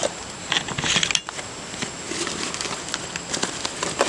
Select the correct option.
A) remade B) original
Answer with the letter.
B